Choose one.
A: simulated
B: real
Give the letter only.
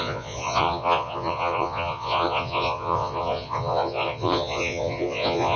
A